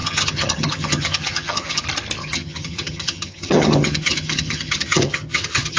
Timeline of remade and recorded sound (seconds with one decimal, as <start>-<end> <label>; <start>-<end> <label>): 0.0-1.8 remade; 1.8-2.2 recorded; 2.2-5.8 remade